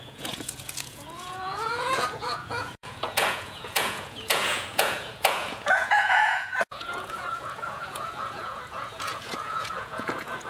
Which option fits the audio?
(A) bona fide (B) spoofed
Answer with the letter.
B